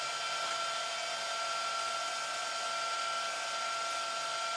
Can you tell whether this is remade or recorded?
recorded